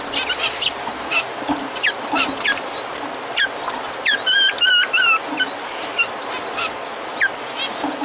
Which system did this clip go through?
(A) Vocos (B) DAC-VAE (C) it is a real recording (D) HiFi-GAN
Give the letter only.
C